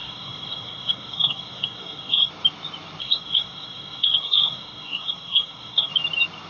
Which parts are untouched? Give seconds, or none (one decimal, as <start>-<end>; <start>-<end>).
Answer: 2.3-3.0; 5.9-6.5